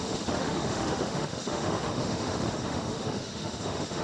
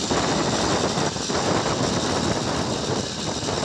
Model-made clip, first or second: first